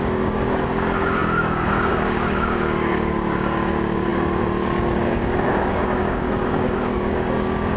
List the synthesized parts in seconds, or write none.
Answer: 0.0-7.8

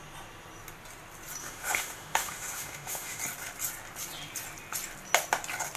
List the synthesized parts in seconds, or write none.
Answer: 1.4-3.2

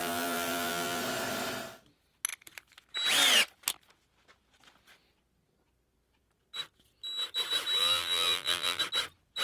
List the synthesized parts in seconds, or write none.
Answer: 0.0-1.0; 7.8-8.8